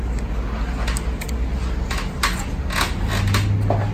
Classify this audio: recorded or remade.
recorded